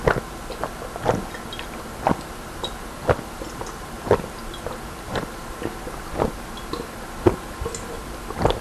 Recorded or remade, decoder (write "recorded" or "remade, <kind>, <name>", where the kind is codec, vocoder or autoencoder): recorded